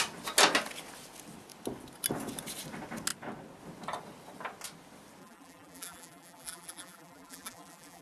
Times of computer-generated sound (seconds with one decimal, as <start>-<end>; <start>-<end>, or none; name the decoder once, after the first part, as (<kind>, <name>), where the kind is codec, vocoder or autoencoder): 5.2-8.0 (vocoder, BigVGAN v2)